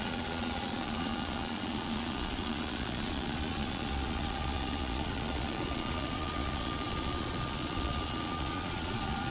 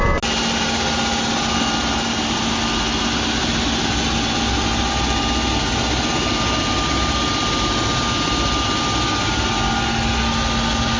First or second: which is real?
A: second